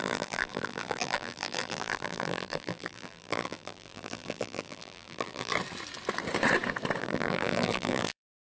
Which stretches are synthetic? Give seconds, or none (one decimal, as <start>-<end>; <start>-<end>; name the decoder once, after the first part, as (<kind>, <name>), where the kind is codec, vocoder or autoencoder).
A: 0.0-5.5 (vocoder, BigVGAN v2); 7.0-8.5

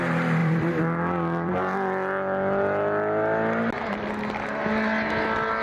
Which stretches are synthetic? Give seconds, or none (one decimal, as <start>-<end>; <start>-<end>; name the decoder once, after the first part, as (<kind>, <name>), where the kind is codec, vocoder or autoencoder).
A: 0.4-1.5 (vocoder, BigVGAN v2)

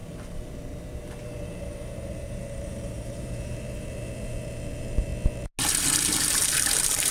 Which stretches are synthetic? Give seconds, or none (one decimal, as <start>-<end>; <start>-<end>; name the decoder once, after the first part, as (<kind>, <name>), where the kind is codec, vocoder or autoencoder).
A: 0.0-5.1 (vocoder, BigVGAN v2); 6.2-7.1

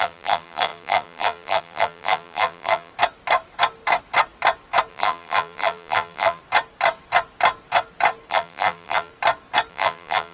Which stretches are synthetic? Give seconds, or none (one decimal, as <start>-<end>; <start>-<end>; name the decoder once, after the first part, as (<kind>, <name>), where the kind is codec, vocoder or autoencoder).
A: 0.0-2.9 (vocoder, BigVGAN v2); 4.9-6.4; 8.3-9.1; 9.7-10.3

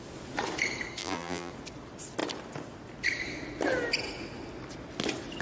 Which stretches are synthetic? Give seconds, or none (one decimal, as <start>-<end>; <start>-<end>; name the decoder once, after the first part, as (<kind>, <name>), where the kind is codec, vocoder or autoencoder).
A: 1.0-1.5 (vocoder, BigVGAN v2)